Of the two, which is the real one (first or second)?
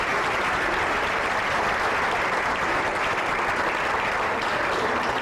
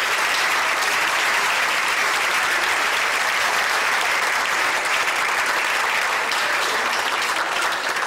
first